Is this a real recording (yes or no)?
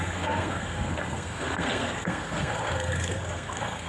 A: no